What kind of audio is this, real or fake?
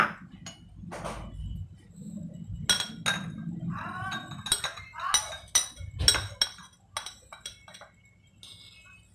real